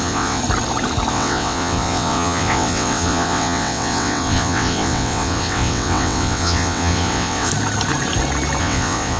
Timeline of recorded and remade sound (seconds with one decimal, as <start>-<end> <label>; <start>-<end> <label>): 0.0-0.4 remade; 0.4-1.1 recorded; 1.1-7.5 remade; 7.5-8.6 recorded; 8.6-9.2 remade